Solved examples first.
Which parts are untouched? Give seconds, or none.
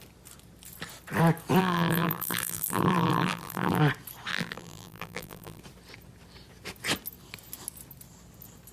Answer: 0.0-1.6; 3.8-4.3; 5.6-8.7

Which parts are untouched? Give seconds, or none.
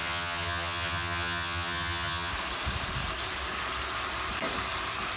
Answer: 2.3-5.2